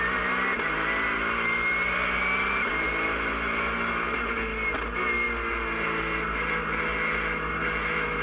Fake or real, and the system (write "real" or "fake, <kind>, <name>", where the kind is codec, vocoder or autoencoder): real